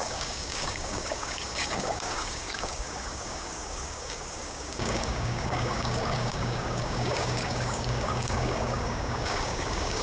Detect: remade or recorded remade